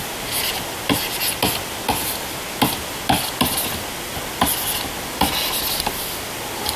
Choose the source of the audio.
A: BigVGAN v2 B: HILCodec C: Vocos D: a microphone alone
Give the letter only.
D